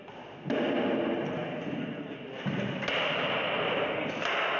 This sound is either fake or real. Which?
real